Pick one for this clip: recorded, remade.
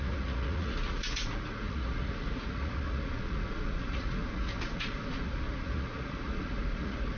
remade